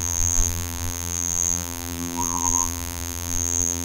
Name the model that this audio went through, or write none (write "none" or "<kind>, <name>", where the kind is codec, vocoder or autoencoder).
vocoder, BigVGAN v2